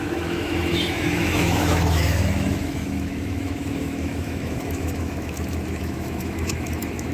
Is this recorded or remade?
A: remade